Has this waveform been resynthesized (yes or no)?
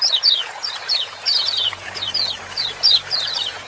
yes